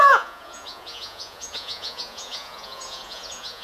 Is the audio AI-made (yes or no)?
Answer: yes